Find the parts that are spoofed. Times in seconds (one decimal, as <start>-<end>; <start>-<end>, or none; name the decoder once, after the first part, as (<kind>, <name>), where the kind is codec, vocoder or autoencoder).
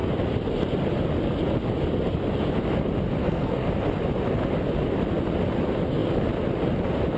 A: 3.2-3.7 (codec, SNAC)